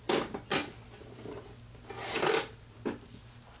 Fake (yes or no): no